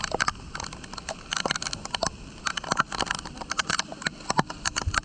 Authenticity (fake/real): real